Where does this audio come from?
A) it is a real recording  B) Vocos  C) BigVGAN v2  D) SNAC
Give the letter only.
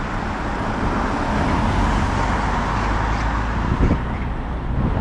A